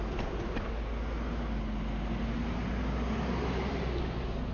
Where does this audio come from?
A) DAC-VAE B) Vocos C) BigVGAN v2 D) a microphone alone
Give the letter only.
D